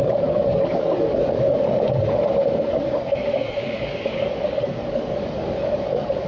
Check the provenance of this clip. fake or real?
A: fake